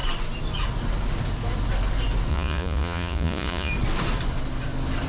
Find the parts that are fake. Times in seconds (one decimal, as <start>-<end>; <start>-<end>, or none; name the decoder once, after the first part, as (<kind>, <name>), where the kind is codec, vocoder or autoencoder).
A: 2.3-3.7 (vocoder, Vocos)